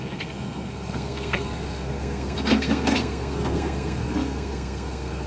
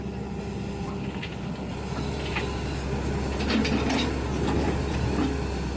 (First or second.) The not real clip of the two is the first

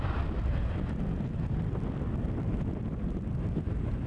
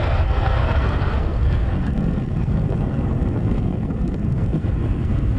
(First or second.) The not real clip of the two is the second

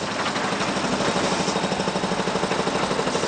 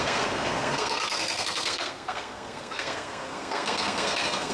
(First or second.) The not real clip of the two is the second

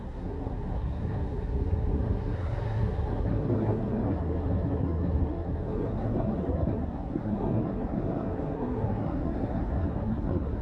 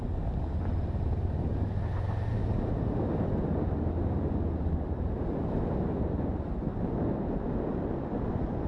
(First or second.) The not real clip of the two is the first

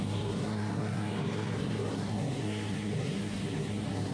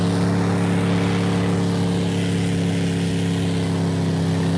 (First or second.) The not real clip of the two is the first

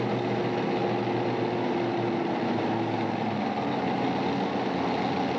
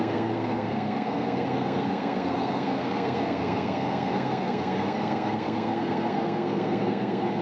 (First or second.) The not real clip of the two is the second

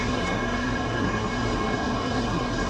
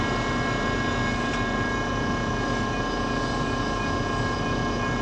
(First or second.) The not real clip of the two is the first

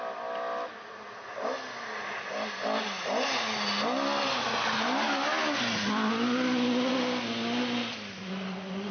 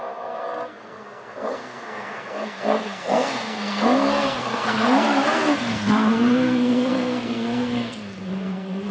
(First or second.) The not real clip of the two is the second